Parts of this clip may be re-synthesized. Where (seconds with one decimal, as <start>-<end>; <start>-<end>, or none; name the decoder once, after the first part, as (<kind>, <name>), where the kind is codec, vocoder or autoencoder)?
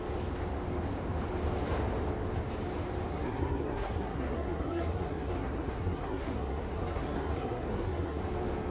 3.1-8.2 (codec, SNAC)